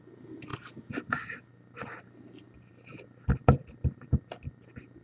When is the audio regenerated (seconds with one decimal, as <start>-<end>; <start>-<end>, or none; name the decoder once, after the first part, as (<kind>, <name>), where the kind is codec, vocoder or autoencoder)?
none